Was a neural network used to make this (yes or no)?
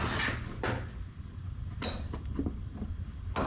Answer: no